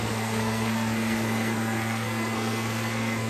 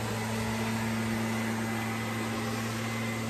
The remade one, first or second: first